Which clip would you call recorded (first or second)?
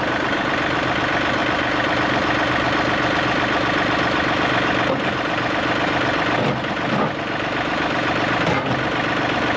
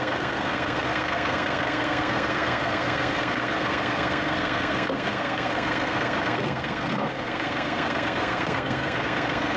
first